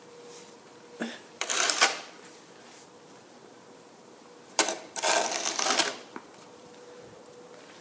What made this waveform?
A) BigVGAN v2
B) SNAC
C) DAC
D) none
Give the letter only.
A